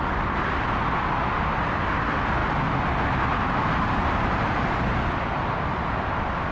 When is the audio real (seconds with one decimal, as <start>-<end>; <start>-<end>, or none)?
0.0-6.5